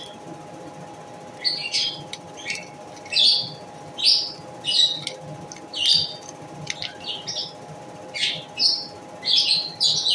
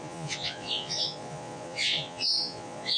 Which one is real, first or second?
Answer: first